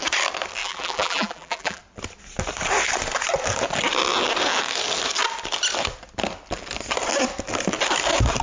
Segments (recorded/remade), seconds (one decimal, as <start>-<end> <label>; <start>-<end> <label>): 0.0-0.6 recorded; 0.6-1.8 remade; 1.8-8.4 recorded